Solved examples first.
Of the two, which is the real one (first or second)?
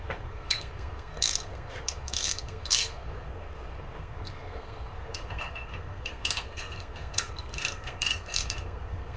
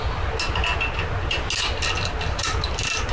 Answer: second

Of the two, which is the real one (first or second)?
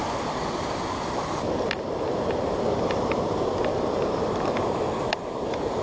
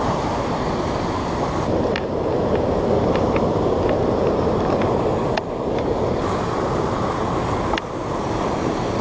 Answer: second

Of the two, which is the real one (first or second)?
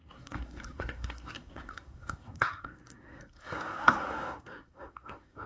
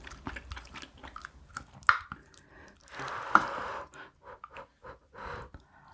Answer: second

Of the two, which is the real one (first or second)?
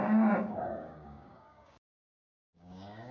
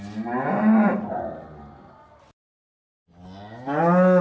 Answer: second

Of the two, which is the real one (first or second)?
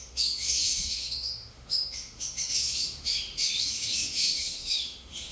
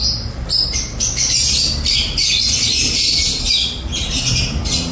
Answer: second